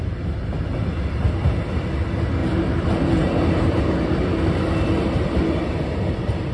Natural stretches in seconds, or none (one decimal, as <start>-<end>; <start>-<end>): 0.0-2.4; 3.8-6.5